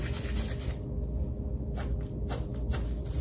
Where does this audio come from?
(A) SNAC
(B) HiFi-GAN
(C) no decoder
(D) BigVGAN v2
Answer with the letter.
C